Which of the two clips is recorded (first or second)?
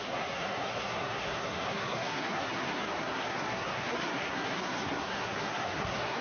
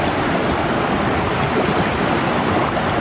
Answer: second